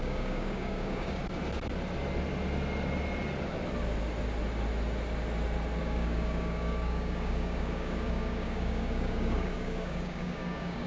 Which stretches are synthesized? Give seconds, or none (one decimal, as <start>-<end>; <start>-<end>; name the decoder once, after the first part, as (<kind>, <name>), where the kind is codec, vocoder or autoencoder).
0.0-1.2 (codec, DAC); 5.8-10.9